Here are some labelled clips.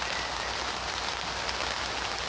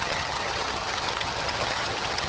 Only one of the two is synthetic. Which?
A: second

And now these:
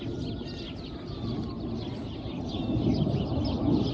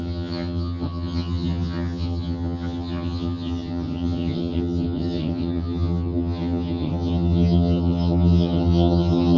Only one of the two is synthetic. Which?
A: second